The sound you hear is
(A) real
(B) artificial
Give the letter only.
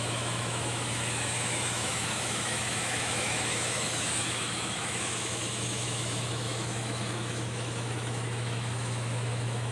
B